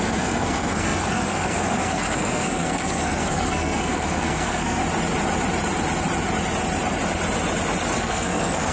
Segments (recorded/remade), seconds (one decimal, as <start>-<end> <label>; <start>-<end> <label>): 0.0-4.8 remade; 4.8-8.0 recorded; 8.0-8.7 remade